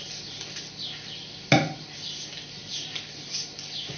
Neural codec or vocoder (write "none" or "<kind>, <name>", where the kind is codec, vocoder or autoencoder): none